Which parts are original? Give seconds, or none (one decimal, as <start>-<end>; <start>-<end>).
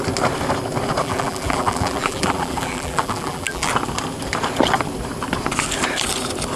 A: 0.0-1.0; 3.7-6.6